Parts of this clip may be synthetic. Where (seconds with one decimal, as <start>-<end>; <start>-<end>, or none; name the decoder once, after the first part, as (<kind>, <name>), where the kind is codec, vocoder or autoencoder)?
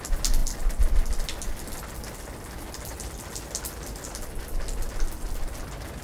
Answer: none